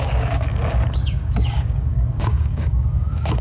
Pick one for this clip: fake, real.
fake